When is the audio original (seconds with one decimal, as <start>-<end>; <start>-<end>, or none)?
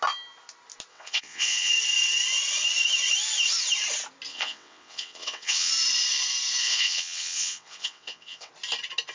0.0-0.9; 1.7-4.3; 5.7-6.6; 8.5-9.1